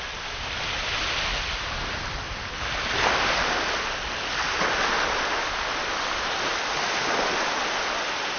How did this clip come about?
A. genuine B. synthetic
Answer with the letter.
A